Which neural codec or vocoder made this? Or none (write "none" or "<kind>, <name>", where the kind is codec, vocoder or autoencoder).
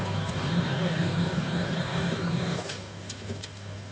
codec, DAC